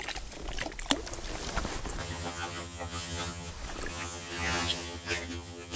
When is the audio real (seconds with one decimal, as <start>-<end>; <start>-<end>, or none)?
0.0-2.0; 3.5-3.9